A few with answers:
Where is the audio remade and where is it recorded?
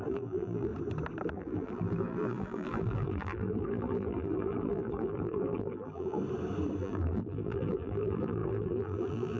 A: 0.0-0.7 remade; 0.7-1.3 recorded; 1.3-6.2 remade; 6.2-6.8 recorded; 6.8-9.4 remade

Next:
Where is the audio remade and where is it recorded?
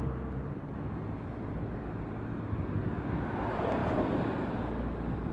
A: 0.0-0.7 recorded; 0.7-2.9 remade; 2.9-3.8 recorded; 3.8-5.3 remade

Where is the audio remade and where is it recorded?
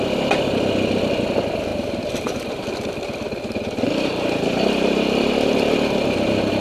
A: 0.0-1.7 recorded; 1.7-2.6 remade; 2.6-6.6 recorded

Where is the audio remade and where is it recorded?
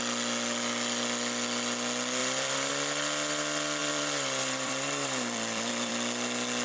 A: 0.0-2.2 recorded; 2.2-2.7 remade; 2.7-3.8 recorded; 3.8-5.9 remade; 5.9-6.6 recorded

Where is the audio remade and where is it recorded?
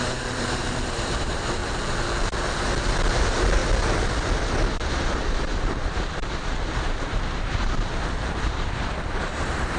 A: 0.0-1.6 remade; 1.6-3.2 recorded; 3.2-3.6 remade; 3.6-4.9 recorded; 4.9-9.8 remade